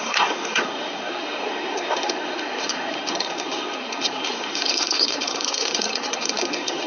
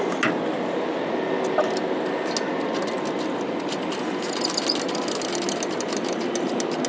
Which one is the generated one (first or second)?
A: first